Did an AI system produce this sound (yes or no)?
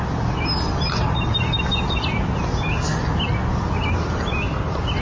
no